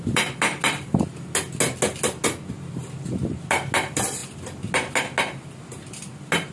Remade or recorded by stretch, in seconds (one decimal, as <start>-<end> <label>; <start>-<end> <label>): 0.0-6.5 recorded